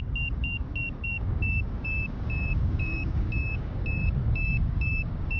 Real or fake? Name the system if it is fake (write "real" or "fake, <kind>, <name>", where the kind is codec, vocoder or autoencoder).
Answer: fake, codec, DAC